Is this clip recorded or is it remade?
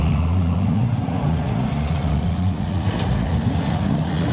remade